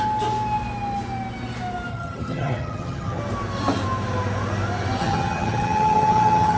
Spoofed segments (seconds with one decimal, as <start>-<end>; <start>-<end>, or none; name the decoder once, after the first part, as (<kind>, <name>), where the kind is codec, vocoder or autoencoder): 1.9-3.2 (vocoder, HiFi-GAN); 5.0-6.6